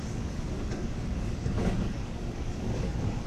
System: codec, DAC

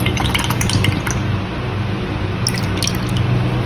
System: none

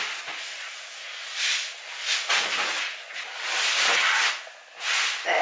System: none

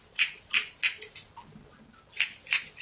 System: none